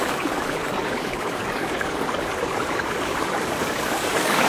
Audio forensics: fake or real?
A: fake